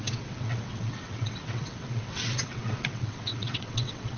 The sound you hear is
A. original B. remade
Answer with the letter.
B